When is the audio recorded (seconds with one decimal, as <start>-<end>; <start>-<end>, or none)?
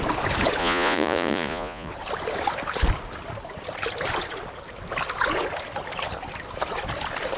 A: 0.0-0.6; 1.9-7.4